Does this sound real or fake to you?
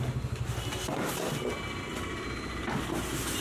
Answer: real